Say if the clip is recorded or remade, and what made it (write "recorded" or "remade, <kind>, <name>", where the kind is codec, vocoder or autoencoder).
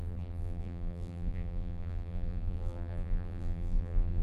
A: remade, vocoder, BigVGAN v2